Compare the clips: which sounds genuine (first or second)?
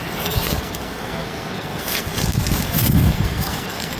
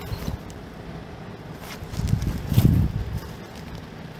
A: second